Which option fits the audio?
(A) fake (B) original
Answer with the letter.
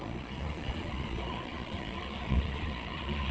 A